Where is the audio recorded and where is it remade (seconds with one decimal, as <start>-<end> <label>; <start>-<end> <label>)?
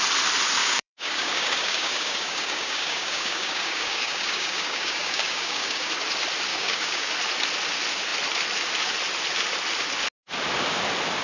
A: 0.0-0.6 recorded; 0.6-5.9 remade; 5.9-6.5 recorded; 6.5-7.1 remade; 7.1-11.2 recorded